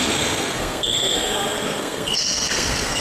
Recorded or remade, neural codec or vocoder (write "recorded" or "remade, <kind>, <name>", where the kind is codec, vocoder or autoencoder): remade, codec, SNAC